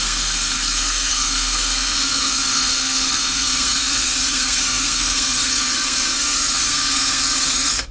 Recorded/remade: remade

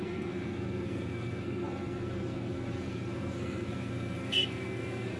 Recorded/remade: remade